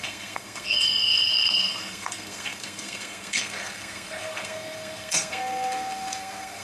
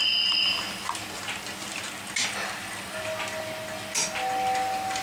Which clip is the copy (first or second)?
first